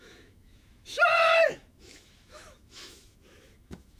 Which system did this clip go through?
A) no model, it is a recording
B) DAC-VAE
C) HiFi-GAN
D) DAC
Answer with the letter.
B